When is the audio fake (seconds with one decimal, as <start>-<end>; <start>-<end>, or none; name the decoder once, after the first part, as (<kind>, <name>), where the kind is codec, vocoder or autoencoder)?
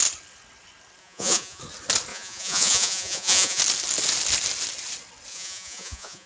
1.0-1.6 (vocoder, Vocos); 2.1-3.6; 5.3-6.3